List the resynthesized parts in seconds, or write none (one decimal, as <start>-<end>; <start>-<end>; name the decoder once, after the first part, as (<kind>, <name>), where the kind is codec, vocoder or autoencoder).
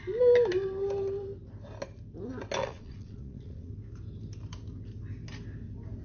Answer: 2.6-3.7 (vocoder, Vocos)